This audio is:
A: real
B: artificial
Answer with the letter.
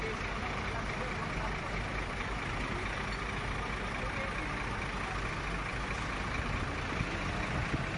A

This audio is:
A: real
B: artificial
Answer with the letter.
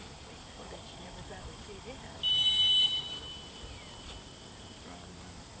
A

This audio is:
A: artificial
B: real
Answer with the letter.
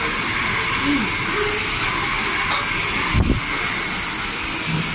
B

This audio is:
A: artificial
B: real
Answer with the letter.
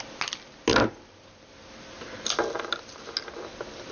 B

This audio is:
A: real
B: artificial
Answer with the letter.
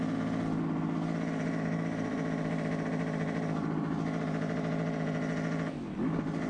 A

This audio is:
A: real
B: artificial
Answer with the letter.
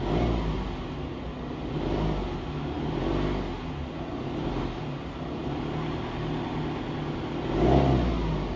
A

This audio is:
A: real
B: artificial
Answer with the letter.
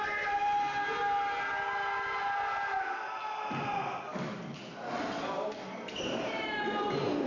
A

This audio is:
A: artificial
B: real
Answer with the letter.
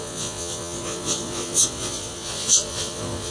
A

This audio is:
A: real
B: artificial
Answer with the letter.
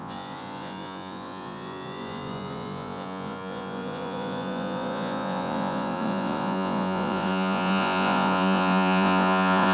B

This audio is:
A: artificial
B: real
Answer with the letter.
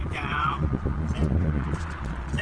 A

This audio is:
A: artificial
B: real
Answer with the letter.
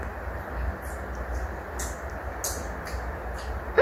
B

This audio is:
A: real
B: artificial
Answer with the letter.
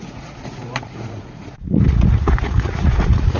B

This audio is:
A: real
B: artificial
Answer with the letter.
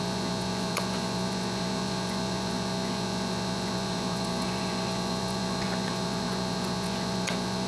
B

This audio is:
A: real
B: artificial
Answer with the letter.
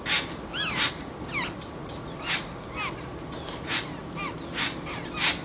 A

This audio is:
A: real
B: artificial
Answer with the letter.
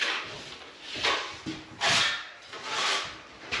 A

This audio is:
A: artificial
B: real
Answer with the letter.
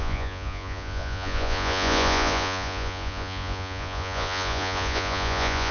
A